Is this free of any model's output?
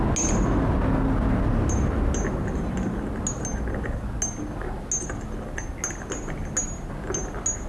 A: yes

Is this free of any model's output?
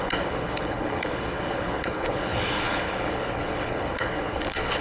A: no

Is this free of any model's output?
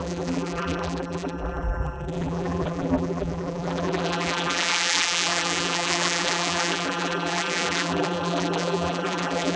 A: no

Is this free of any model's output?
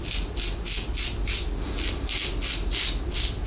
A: yes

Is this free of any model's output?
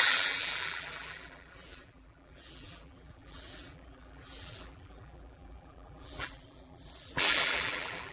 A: no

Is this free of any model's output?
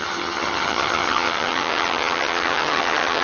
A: no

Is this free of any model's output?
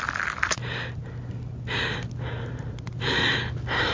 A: yes